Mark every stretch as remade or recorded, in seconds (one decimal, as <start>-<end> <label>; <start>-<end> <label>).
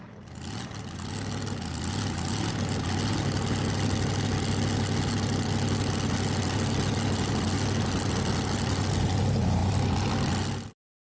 0.0-11.1 recorded